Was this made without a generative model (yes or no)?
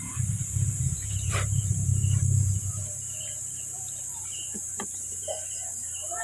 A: yes